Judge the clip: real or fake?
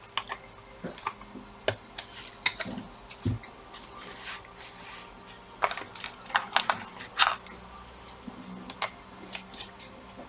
real